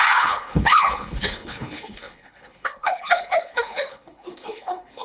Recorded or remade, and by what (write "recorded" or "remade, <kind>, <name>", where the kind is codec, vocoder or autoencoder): remade, codec, HILCodec